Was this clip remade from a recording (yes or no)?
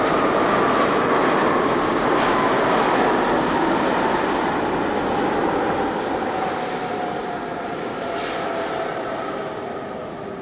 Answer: no